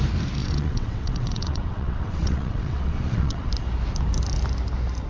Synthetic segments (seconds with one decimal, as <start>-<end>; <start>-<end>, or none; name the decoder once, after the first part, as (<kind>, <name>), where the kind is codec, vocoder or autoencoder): 0.4-3.5 (vocoder, WaveNeXt)